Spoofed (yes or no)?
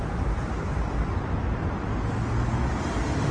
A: no